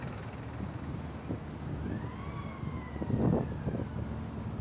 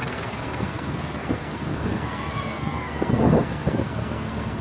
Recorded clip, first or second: first